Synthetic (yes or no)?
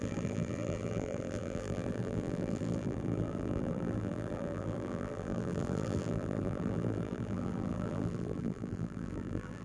yes